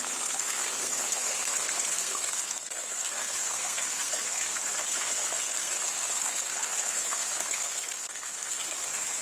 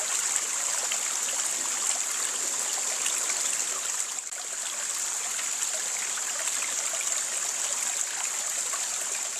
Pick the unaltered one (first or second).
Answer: second